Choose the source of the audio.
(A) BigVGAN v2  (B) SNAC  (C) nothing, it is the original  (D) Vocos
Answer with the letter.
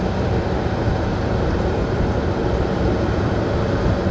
C